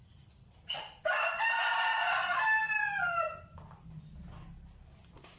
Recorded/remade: recorded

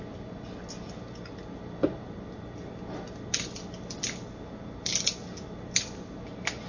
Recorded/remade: recorded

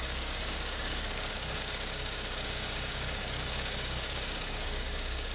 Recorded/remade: remade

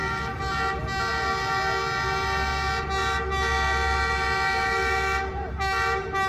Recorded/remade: recorded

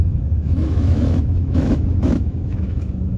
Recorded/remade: remade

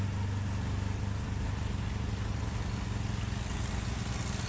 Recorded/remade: recorded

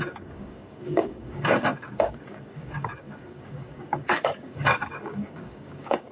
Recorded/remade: remade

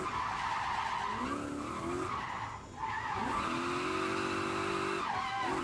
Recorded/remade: recorded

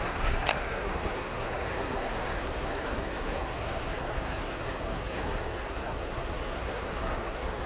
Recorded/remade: remade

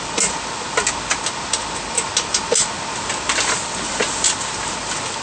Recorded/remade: recorded